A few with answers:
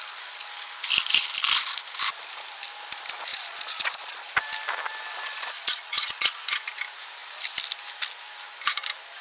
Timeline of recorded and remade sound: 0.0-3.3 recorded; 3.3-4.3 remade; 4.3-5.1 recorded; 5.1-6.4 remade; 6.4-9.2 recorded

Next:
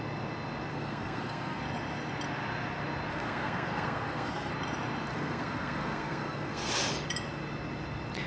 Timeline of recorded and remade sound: 0.0-0.7 recorded; 0.7-1.6 remade; 1.6-3.1 recorded; 3.1-4.5 remade; 4.5-5.1 recorded; 5.1-6.7 remade; 6.7-8.3 recorded

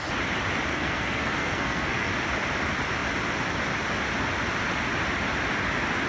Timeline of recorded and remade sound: 0.0-0.7 recorded; 0.7-2.1 remade; 2.1-6.1 recorded

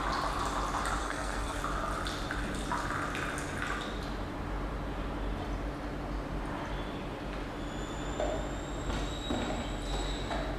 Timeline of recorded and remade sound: 0.0-1.0 recorded; 1.0-1.6 remade; 1.6-10.6 recorded